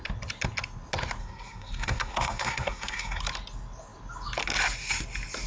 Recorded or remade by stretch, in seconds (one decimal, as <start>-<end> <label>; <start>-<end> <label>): 0.0-1.2 recorded; 1.2-3.2 remade; 3.2-5.5 recorded